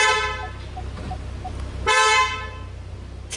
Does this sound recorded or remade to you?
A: recorded